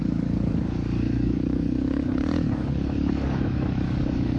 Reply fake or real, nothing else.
fake